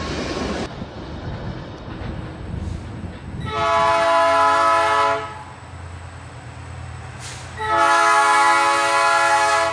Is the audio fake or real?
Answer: real